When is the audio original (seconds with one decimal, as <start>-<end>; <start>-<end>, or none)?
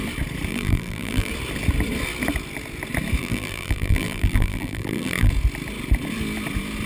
0.0-0.5; 1.3-3.2; 5.3-6.9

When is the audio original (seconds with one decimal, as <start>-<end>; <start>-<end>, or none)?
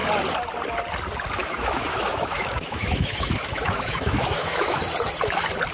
0.0-1.4; 4.8-5.7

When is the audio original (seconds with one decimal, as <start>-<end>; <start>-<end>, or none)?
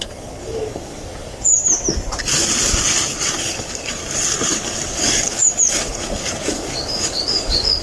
1.5-3.4; 4.0-4.5